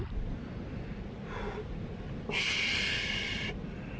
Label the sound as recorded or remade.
recorded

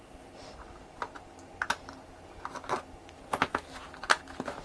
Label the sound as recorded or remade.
recorded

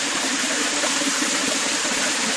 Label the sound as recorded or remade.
remade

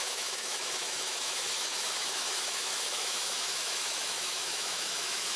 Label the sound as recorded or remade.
remade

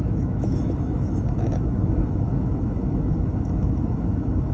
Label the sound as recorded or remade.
remade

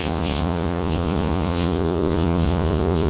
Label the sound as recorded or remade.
remade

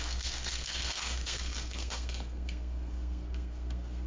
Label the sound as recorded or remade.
remade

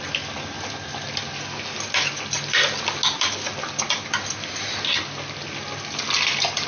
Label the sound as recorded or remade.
recorded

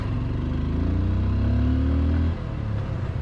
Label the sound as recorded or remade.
recorded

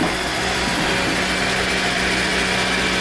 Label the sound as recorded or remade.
recorded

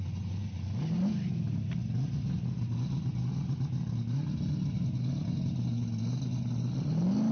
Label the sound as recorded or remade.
recorded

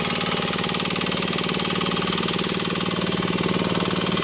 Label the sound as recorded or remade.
recorded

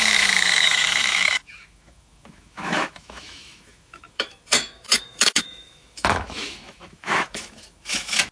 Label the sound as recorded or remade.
remade